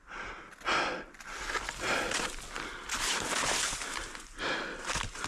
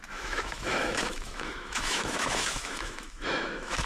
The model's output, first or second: second